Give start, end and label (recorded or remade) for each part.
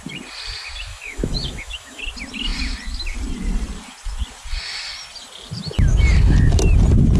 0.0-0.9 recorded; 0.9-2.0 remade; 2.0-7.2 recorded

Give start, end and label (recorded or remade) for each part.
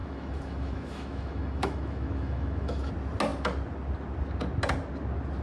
0.0-2.9 remade; 2.9-5.4 recorded